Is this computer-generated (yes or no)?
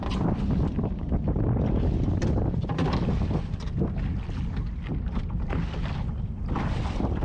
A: no